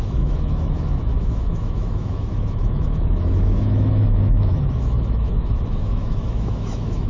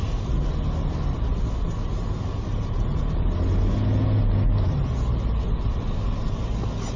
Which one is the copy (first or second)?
first